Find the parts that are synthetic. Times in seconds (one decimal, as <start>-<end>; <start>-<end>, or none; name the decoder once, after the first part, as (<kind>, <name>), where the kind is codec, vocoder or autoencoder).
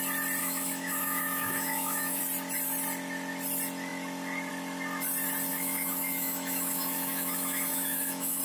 0.4-2.2 (autoencoder, DAC-VAE); 5.5-8.4